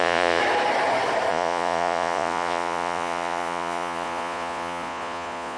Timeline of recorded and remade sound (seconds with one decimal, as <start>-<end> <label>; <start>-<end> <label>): 0.0-0.4 remade; 0.4-1.3 recorded; 1.3-5.6 remade